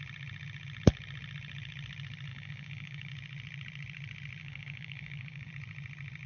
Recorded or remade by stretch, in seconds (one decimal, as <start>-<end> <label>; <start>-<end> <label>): 0.0-2.3 recorded; 2.3-3.1 remade; 3.1-4.4 recorded; 4.4-5.5 remade; 5.5-6.3 recorded